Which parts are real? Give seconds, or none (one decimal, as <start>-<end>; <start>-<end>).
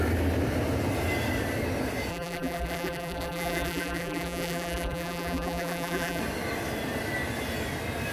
0.0-2.1; 6.2-8.1